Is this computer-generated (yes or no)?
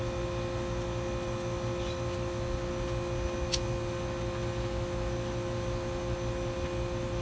no